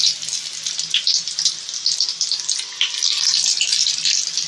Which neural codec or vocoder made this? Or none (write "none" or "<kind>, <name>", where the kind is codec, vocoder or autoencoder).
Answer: none